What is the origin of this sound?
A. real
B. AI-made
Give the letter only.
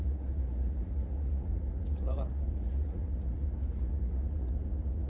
B